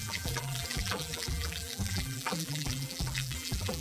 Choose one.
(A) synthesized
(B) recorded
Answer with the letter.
A